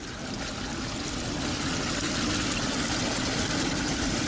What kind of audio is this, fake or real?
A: real